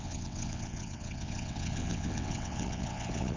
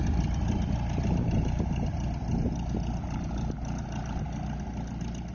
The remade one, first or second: first